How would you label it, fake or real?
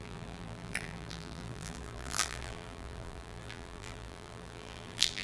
fake